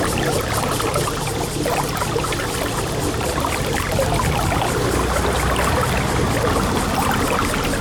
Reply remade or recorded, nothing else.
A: recorded